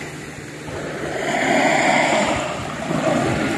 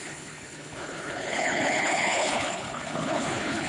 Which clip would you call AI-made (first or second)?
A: second